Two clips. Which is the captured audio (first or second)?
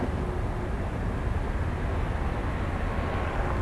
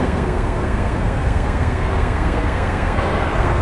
first